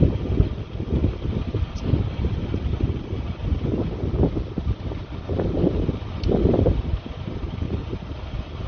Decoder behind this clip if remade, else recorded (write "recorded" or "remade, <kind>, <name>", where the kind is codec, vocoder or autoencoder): recorded